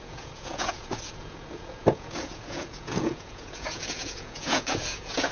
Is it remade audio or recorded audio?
remade